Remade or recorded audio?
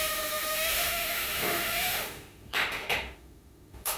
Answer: remade